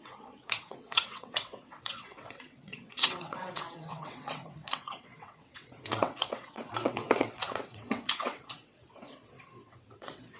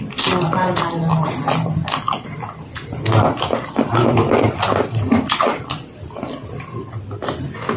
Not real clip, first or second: first